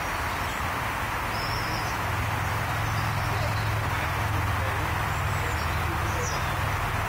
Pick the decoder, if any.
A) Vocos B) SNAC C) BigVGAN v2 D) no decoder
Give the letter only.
D